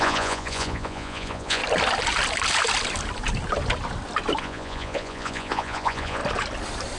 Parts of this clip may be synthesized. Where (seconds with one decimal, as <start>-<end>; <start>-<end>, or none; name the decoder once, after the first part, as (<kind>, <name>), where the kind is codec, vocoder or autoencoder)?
0.0-1.6 (vocoder, Vocos); 4.4-6.2